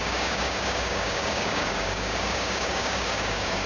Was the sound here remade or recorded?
remade